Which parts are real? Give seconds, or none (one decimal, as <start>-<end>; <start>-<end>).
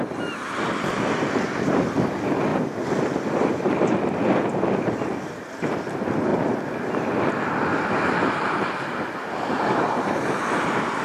0.0-11.0